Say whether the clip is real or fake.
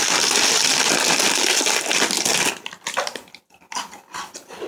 real